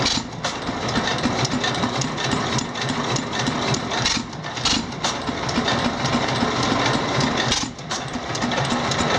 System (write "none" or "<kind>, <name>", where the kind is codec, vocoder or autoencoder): none